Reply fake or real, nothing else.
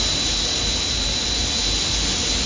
fake